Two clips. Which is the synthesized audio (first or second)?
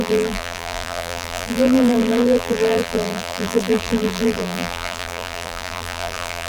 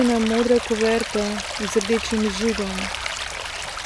first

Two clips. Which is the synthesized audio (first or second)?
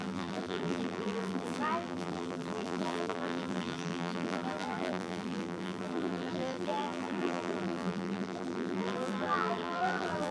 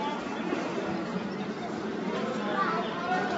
first